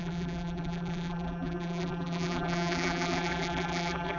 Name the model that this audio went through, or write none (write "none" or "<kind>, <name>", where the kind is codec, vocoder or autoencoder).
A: vocoder, BigVGAN v2